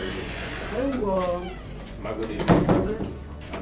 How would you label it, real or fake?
fake